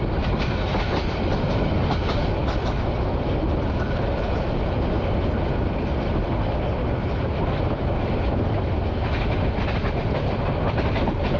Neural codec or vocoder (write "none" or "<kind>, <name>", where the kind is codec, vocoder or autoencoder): none